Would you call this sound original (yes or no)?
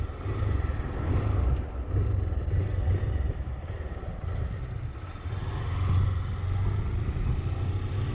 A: yes